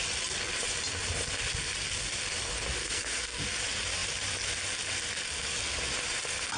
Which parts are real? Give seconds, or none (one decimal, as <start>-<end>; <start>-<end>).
0.0-2.8; 3.4-6.6